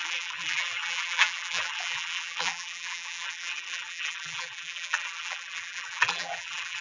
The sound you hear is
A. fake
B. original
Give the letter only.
A